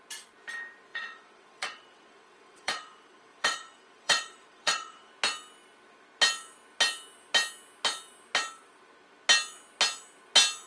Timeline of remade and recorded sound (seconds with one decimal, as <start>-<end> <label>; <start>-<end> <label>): 0.0-0.9 recorded; 0.9-5.1 remade; 5.1-10.7 recorded

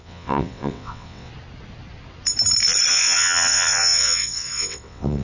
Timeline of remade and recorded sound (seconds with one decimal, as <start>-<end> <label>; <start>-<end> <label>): 0.0-1.3 remade; 1.3-2.9 recorded; 2.9-5.2 remade

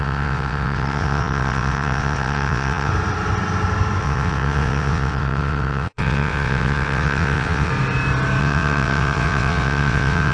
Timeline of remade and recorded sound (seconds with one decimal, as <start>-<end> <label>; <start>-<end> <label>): 0.0-2.9 remade; 2.9-4.0 recorded; 4.0-7.7 remade; 7.7-8.4 recorded; 8.4-10.3 remade

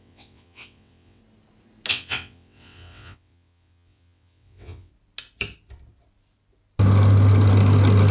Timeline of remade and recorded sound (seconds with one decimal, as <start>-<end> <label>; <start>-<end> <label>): 0.0-1.2 remade; 1.2-1.9 recorded; 1.9-4.9 remade; 4.9-8.1 recorded

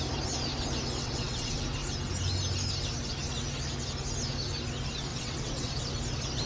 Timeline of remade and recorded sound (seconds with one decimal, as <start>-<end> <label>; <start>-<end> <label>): 0.0-1.0 recorded; 1.0-1.6 remade; 1.6-5.1 recorded; 5.1-5.7 remade; 5.7-6.5 recorded